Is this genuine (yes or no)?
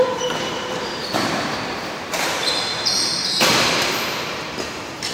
no